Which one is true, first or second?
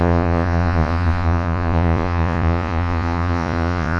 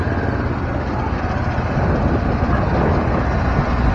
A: second